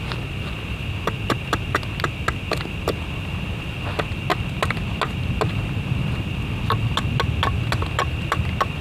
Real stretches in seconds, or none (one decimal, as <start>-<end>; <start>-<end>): 0.0-8.8